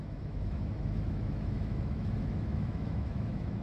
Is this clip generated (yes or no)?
yes